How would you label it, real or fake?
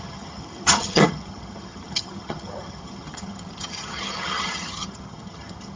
fake